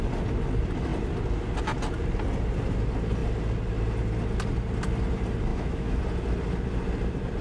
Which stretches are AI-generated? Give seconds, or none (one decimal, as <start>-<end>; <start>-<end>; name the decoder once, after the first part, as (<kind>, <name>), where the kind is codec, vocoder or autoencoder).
5.5-6.0 (autoencoder, DAC-VAE)